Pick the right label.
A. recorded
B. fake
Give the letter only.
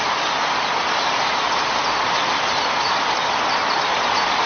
A